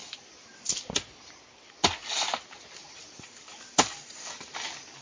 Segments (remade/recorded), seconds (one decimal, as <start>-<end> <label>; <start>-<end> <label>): 0.0-3.5 recorded; 3.5-4.2 remade; 4.2-5.0 recorded